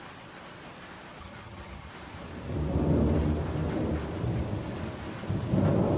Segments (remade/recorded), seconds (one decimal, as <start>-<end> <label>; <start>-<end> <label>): 0.0-1.2 recorded; 1.2-1.9 remade; 1.9-6.0 recorded